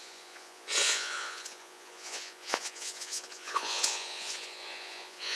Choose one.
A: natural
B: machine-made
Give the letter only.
B